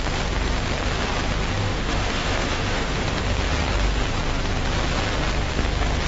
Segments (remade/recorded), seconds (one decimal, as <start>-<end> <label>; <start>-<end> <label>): 0.0-1.6 recorded; 1.6-3.2 remade; 3.2-6.1 recorded